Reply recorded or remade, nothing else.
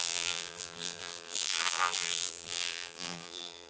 remade